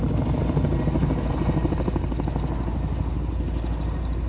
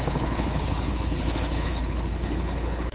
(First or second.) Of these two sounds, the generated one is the second